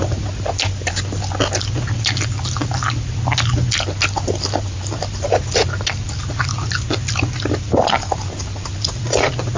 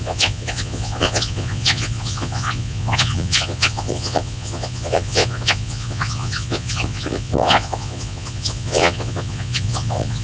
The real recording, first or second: first